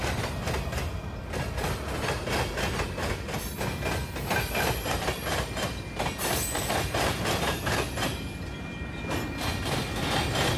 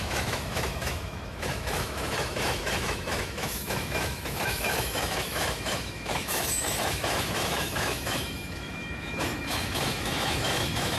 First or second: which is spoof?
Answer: second